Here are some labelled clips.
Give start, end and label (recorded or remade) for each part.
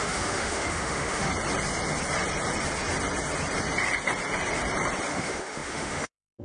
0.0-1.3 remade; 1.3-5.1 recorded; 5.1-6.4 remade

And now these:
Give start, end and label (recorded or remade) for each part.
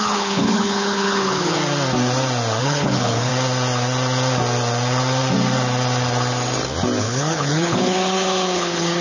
0.0-1.6 remade; 1.6-2.6 recorded; 2.6-3.3 remade; 3.3-7.0 recorded; 7.0-9.0 remade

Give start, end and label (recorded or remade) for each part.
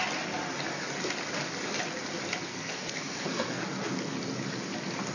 0.0-2.5 recorded; 2.5-3.6 remade; 3.6-5.1 recorded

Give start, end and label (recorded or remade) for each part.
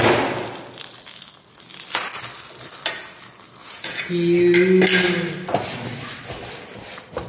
0.0-3.6 recorded; 3.6-4.1 remade; 4.1-7.3 recorded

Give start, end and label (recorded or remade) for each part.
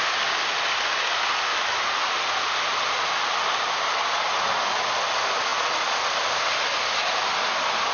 0.0-7.9 recorded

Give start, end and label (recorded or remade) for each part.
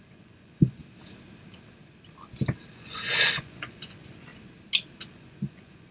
0.0-0.8 remade; 0.8-2.7 recorded; 2.7-4.3 remade; 4.3-5.1 recorded; 5.1-5.9 remade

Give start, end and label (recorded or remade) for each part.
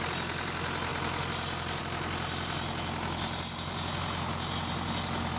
0.0-5.4 recorded